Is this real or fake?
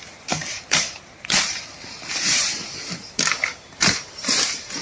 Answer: fake